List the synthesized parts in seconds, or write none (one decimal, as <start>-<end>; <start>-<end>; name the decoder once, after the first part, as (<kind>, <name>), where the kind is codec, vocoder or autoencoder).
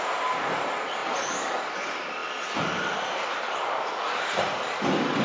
none